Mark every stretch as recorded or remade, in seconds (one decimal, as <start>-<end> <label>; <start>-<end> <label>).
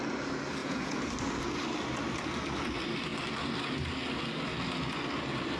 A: 0.0-0.6 recorded; 0.6-1.1 remade; 1.1-5.6 recorded